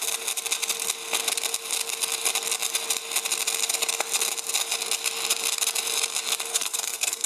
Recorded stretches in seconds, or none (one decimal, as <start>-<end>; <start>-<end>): 0.0-6.5